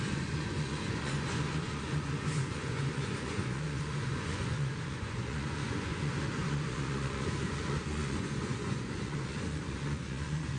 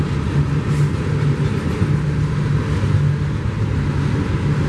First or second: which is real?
second